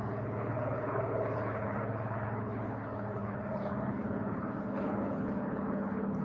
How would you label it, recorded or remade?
remade